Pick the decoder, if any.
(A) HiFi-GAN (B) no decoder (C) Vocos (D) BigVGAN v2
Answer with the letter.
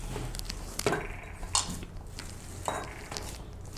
B